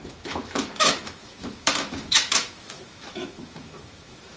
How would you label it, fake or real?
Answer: fake